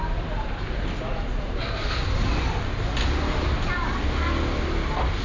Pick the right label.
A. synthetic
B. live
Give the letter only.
B